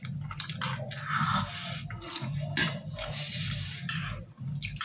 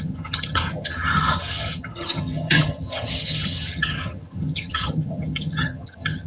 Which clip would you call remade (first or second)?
second